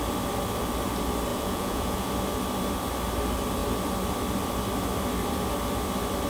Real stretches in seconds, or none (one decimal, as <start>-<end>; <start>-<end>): 0.0-1.3; 2.1-6.3